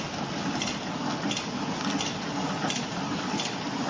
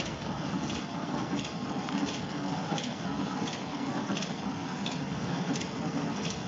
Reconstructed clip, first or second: second